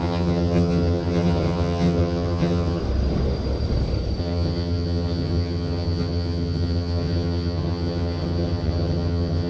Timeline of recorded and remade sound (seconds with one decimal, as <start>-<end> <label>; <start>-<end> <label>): 0.0-2.8 remade; 2.8-4.2 recorded; 4.2-9.5 remade